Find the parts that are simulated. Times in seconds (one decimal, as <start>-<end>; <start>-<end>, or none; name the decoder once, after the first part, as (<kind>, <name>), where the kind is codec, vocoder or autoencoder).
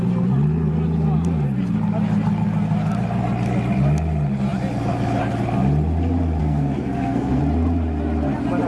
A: 6.4-7.4 (codec, SNAC)